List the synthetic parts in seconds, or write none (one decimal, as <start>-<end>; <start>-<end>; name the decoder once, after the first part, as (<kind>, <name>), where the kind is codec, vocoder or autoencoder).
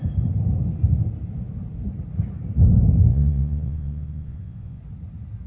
3.1-4.8 (vocoder, Vocos)